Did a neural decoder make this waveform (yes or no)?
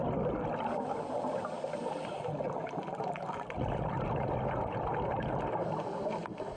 no